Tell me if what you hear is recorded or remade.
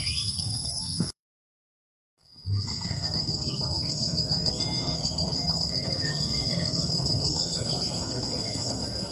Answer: remade